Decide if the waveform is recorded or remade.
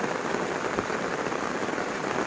recorded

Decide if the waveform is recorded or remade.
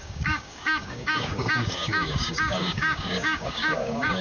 remade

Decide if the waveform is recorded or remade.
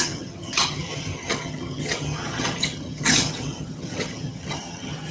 remade